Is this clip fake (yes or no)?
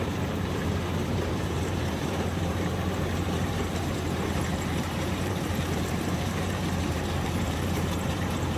yes